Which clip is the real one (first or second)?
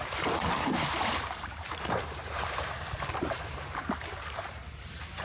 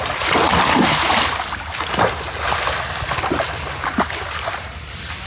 second